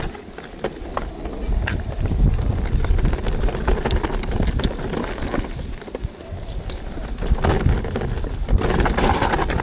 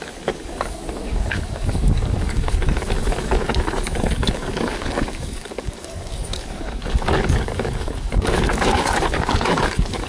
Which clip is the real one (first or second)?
first